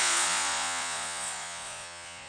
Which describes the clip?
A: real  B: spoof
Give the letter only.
B